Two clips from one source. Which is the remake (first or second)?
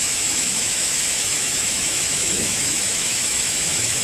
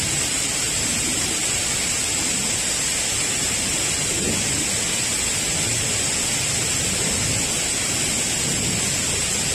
first